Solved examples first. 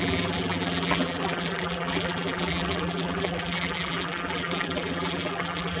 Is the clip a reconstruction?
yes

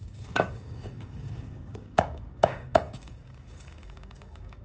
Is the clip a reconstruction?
yes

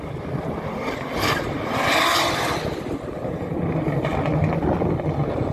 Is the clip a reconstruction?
no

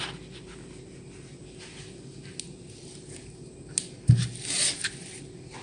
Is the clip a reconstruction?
no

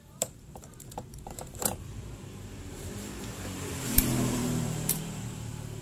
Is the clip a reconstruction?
yes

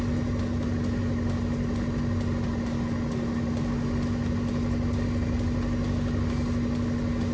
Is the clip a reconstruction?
no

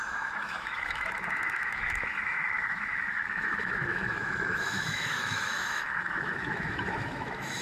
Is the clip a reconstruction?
yes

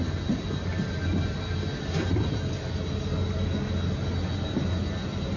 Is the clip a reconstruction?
no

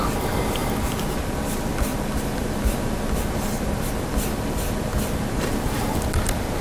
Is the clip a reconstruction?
no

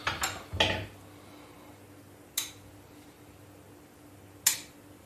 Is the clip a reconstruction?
no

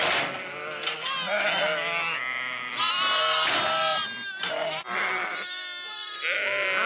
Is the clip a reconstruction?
no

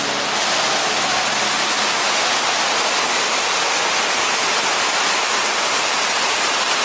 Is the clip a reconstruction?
no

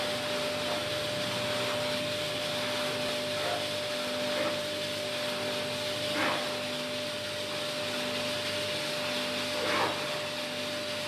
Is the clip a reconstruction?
no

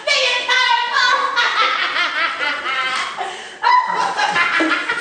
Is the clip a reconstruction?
no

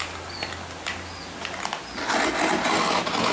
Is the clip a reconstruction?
no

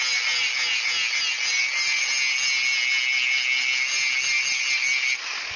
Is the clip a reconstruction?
no